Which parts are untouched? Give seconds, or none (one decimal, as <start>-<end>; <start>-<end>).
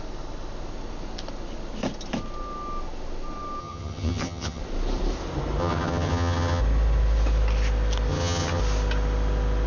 0.0-3.6; 4.6-5.6; 6.6-8.1; 8.6-9.7